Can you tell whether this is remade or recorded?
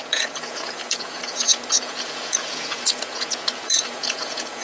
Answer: remade